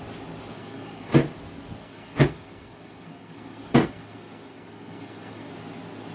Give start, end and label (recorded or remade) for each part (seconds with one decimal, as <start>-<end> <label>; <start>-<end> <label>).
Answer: 0.0-0.5 recorded; 0.5-1.1 remade; 1.1-1.8 recorded; 1.8-5.5 remade; 5.5-6.1 recorded